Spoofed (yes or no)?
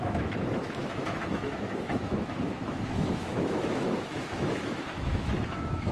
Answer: yes